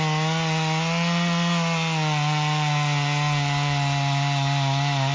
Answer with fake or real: real